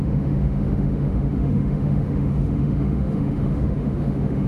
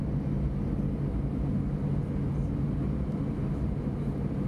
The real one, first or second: second